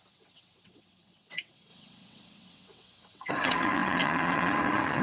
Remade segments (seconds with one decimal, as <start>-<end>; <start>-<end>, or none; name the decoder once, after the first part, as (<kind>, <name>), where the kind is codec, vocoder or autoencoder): 0.0-5.0 (vocoder, WaveNeXt)